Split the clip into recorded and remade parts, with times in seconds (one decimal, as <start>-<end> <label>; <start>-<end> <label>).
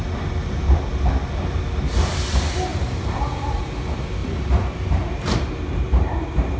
0.0-2.7 recorded; 2.7-3.6 remade; 3.6-4.2 recorded; 4.2-6.6 remade